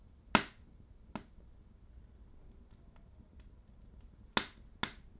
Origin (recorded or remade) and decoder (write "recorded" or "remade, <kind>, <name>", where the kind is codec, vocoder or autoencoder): recorded